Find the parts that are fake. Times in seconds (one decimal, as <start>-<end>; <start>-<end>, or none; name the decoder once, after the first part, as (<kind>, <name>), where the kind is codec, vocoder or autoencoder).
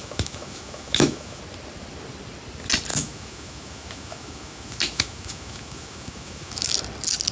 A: 0.0-1.4 (autoencoder, DAC-VAE); 2.9-6.7